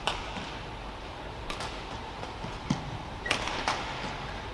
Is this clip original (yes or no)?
no